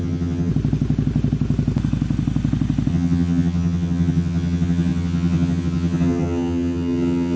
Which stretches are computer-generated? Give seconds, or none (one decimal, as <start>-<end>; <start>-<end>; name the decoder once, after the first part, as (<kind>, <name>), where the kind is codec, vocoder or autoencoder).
0.0-0.5 (vocoder, HiFi-GAN); 2.9-7.4